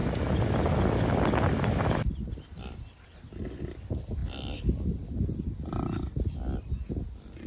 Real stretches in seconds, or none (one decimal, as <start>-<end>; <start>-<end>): 0.0-1.7; 4.2-7.5